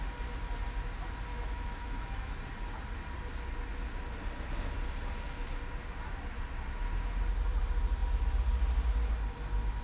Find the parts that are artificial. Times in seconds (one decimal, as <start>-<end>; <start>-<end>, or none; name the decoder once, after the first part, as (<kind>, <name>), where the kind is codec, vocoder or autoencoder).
1.3-2.4 (autoencoder, DAC-VAE)